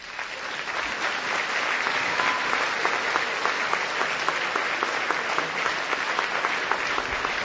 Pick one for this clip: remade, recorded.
recorded